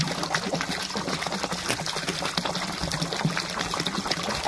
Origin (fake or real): real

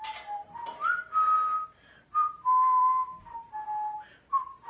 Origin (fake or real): real